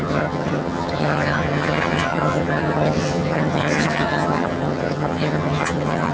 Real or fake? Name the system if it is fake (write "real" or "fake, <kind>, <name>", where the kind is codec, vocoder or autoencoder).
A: fake, vocoder, HiFi-GAN